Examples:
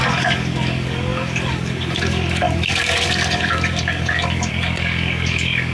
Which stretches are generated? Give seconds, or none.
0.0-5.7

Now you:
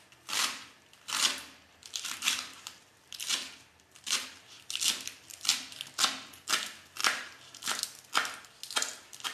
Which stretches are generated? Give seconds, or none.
1.8-3.3; 7.0-7.8

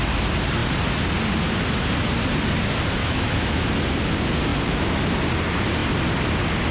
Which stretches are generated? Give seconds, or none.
3.0-3.7

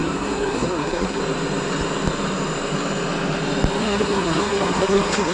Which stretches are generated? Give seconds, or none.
0.0-1.2; 3.8-5.3